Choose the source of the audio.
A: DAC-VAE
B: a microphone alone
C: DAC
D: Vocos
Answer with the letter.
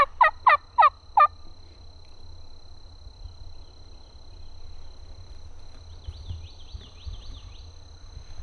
B